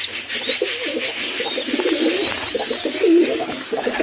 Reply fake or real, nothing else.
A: real